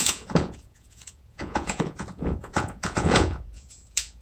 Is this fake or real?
fake